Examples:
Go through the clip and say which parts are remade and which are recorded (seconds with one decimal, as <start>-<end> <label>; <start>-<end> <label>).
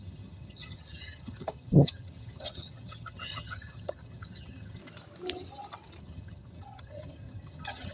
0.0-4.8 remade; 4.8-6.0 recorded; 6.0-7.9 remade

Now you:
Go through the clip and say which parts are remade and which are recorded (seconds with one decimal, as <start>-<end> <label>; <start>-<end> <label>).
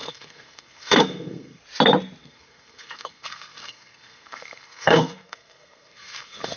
0.0-1.6 remade; 1.6-2.2 recorded; 2.2-6.6 remade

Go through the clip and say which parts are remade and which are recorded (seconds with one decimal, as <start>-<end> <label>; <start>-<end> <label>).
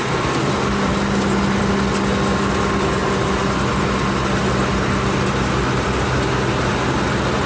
0.0-7.5 recorded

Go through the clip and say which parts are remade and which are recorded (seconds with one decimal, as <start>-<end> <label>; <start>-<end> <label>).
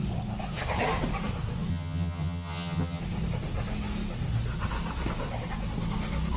0.0-1.7 recorded; 1.7-3.0 remade; 3.0-6.4 recorded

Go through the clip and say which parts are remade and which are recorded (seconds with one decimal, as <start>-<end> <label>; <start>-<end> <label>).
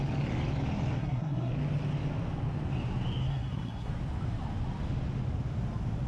0.0-1.0 recorded; 1.0-1.5 remade; 1.5-3.2 recorded; 3.2-3.9 remade; 3.9-6.1 recorded